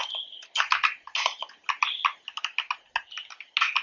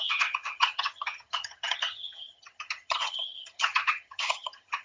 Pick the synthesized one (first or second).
second